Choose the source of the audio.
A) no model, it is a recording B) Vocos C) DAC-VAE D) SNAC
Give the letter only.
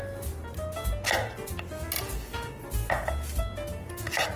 A